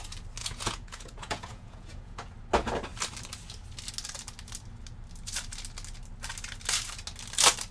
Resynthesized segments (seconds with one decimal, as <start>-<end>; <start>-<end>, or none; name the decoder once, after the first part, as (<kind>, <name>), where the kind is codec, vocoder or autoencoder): 0.4-2.3 (vocoder, Vocos)